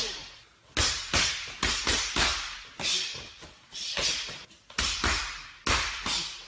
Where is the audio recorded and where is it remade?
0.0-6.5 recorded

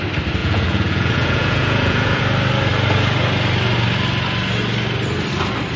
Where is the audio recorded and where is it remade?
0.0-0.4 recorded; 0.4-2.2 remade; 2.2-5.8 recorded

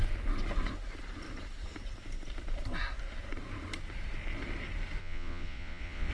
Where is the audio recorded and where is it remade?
0.0-5.0 recorded; 5.0-6.1 remade

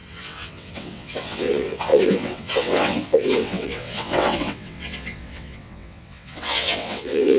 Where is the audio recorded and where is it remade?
0.0-7.4 remade

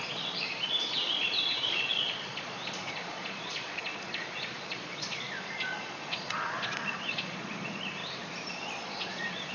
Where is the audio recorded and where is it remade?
0.0-8.0 remade; 8.0-8.5 recorded; 8.5-9.5 remade